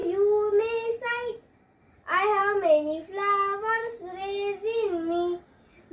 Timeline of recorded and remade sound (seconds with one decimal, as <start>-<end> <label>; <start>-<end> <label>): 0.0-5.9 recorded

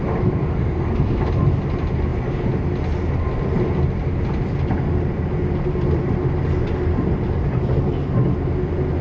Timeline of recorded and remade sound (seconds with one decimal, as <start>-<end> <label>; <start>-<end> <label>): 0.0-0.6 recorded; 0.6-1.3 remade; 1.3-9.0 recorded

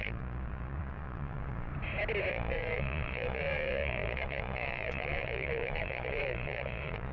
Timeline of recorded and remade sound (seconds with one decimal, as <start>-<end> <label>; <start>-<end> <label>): 0.0-1.7 remade; 1.7-2.3 recorded; 2.3-7.1 remade

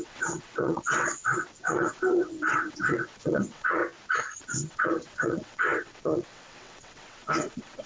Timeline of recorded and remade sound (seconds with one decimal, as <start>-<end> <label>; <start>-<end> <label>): 0.0-3.8 remade; 3.8-4.4 recorded; 4.4-7.9 remade

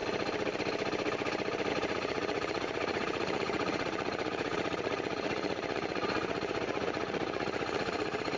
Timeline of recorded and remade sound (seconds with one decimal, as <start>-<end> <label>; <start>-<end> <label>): 0.0-1.7 recorded; 1.7-8.4 remade

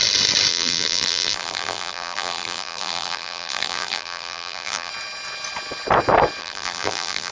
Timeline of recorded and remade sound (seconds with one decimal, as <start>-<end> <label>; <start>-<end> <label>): 0.0-0.5 recorded; 0.5-4.9 remade; 4.9-6.4 recorded; 6.4-7.3 remade